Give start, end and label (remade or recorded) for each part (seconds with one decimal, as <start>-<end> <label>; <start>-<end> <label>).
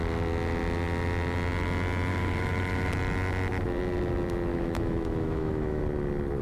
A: 0.0-2.1 recorded; 2.1-2.9 remade; 2.9-4.5 recorded; 4.5-5.8 remade; 5.8-6.4 recorded